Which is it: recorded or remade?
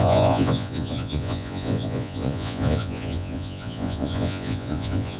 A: remade